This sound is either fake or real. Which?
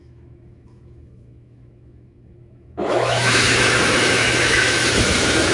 fake